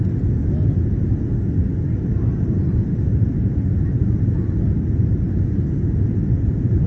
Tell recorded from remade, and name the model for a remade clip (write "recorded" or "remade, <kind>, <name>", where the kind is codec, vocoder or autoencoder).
recorded